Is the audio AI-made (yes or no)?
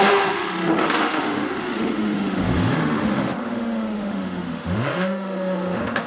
yes